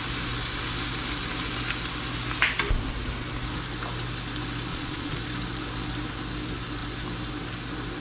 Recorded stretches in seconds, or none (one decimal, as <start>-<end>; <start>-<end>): 0.0-4.7; 5.2-8.0